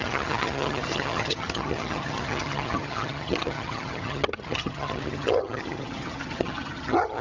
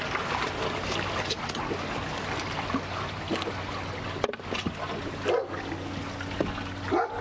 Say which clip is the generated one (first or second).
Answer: first